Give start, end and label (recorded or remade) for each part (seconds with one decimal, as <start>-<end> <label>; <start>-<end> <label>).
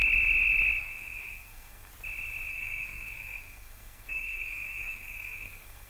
0.0-0.8 recorded; 0.8-1.9 remade; 1.9-2.5 recorded; 2.5-5.9 remade